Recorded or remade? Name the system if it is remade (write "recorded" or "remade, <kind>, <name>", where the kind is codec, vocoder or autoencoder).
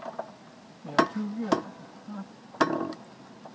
recorded